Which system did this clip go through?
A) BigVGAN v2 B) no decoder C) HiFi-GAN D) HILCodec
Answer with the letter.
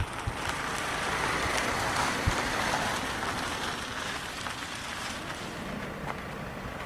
A